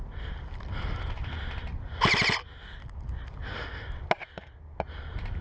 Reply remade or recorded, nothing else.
recorded